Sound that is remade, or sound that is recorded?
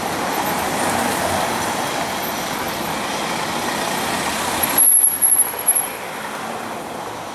remade